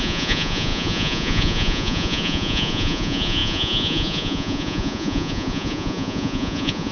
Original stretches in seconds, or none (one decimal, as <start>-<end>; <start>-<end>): none